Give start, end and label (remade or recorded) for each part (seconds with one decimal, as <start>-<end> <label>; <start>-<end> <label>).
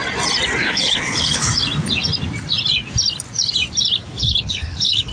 0.0-0.6 recorded; 0.6-1.5 remade; 1.5-4.0 recorded; 4.0-5.1 remade